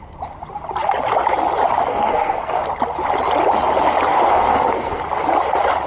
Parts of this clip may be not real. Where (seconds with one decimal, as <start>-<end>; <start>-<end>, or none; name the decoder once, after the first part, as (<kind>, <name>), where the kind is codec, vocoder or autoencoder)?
1.9-2.6 (codec, SNAC); 4.1-5.0